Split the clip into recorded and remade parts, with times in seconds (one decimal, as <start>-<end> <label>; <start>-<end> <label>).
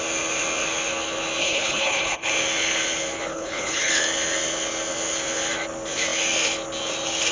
0.0-1.4 recorded; 1.4-2.3 remade; 2.3-3.3 recorded; 3.3-3.9 remade; 3.9-7.3 recorded